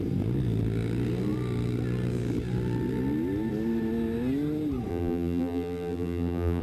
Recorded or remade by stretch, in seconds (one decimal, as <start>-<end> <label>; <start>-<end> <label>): 0.0-4.9 recorded; 4.9-6.6 remade